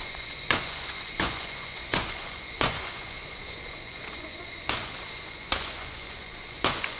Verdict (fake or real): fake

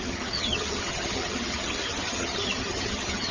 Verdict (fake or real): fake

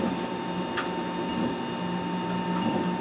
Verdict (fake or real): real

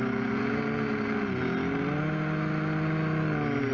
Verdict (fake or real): real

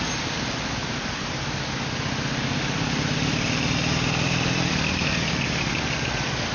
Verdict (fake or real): real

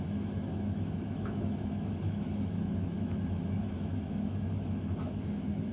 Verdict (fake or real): fake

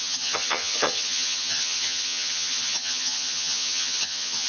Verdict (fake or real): fake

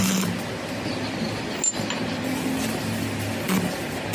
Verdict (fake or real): real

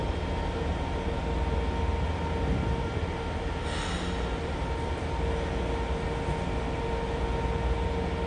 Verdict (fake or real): real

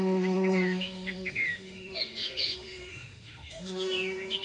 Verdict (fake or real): fake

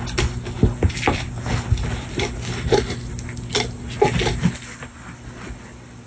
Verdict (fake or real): real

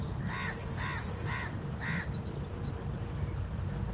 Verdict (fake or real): real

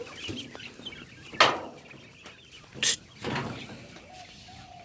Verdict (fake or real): real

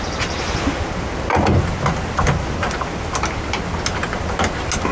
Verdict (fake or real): real